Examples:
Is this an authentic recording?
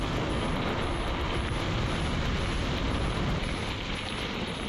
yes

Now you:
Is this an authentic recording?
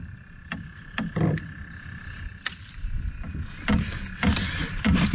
yes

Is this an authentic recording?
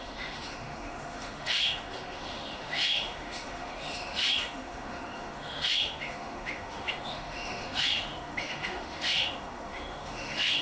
no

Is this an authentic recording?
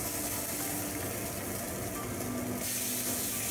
yes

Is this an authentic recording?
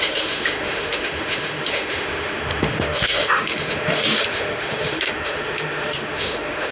no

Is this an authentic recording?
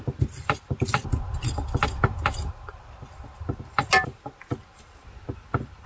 yes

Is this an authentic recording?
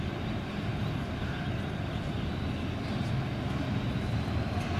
yes